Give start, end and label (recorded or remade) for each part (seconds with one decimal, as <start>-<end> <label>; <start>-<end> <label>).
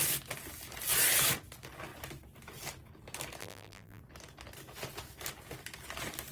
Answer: 0.0-3.4 recorded; 3.4-4.0 remade; 4.0-6.3 recorded